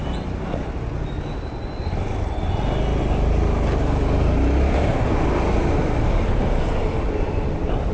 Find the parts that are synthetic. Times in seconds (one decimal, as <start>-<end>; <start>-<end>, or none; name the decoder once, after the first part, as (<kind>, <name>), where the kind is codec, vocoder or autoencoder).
none